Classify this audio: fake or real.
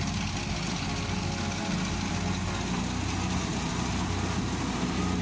real